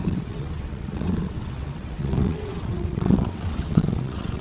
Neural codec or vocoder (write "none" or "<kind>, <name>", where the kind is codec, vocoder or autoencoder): vocoder, WaveNeXt